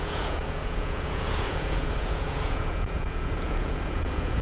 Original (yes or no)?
no